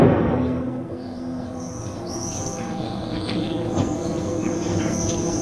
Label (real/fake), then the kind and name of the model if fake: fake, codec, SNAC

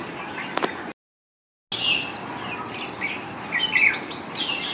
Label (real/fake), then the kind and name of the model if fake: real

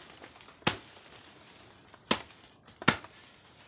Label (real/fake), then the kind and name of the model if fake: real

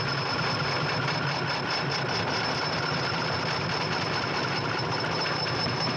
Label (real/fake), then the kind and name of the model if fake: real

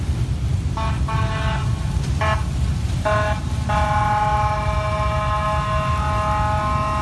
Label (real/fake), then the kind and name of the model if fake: real